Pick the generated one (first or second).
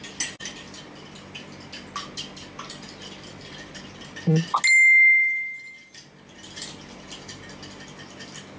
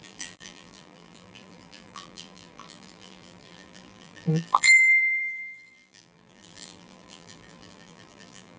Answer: second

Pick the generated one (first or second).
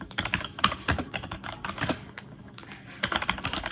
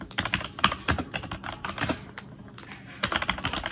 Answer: first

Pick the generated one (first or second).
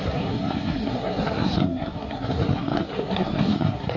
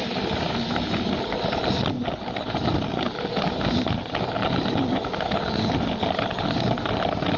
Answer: first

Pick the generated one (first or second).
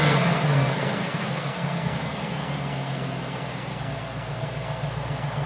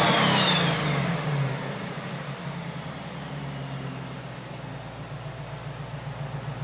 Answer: first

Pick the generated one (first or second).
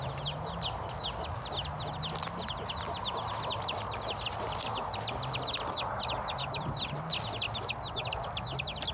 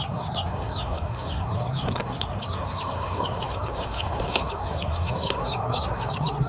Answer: second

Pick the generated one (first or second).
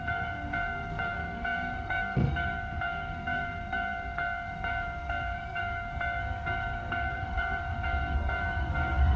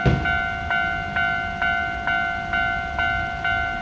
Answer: first